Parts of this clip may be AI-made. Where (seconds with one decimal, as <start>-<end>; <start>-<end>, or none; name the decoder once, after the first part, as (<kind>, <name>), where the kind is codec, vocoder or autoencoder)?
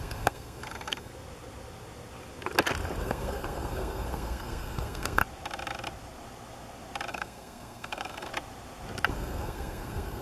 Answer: 0.0-1.1 (codec, SNAC); 3.0-5.2; 7.1-8.3; 9.1-10.2